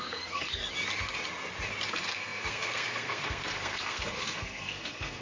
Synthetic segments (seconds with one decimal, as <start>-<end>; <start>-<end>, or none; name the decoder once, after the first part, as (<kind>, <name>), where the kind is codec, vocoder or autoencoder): 0.0-0.6 (codec, SNAC); 1.9-5.2